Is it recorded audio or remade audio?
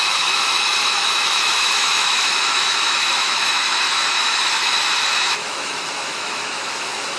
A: remade